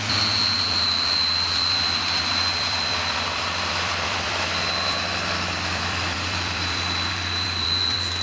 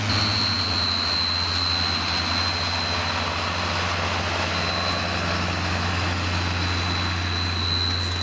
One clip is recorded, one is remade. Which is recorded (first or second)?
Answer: second